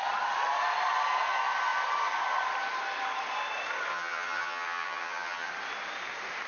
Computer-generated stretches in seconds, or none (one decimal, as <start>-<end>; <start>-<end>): 3.9-5.5